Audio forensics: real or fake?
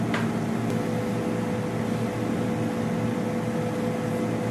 real